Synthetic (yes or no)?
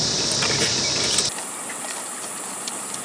no